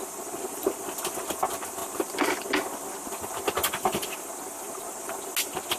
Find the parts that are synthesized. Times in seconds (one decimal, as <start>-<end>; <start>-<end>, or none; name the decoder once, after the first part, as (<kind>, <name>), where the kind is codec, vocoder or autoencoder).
none